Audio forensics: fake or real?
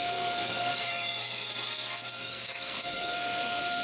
fake